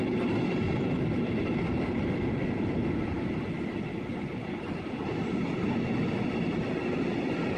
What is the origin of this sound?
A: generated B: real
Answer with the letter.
B